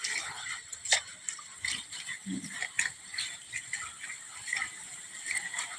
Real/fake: fake